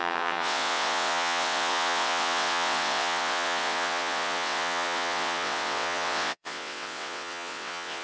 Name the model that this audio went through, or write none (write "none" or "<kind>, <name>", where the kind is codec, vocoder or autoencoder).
vocoder, WaveNeXt